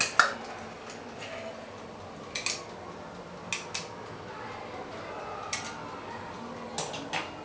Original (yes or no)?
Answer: yes